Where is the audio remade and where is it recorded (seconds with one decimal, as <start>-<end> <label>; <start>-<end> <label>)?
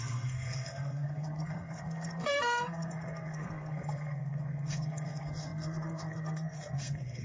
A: 0.0-7.2 remade